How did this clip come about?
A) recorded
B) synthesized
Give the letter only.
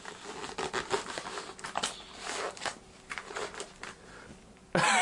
A